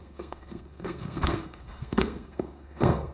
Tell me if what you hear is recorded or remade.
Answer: remade